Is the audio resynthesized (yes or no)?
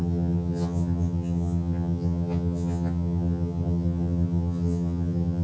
yes